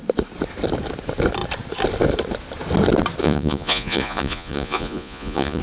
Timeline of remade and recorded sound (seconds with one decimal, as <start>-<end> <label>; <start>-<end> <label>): 0.0-3.2 recorded; 3.2-5.6 remade